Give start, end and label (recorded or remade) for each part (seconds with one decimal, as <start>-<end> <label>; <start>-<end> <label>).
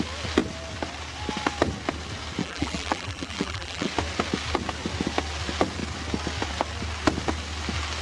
0.0-2.4 recorded; 2.4-3.9 remade; 3.9-8.0 recorded